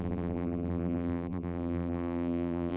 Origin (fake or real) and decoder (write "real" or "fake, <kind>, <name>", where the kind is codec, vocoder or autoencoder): fake, vocoder, BigVGAN v2